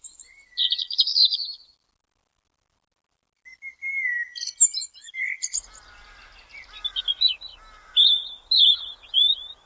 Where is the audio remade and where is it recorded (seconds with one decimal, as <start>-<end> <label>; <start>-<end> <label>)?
0.0-9.7 recorded